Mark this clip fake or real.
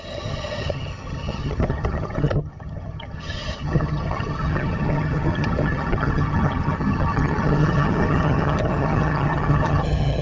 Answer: fake